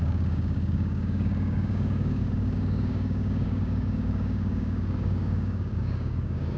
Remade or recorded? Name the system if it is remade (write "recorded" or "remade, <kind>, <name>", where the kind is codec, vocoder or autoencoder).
remade, codec, DAC